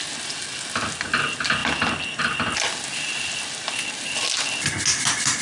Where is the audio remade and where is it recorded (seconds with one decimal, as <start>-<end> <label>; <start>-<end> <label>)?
0.0-5.4 recorded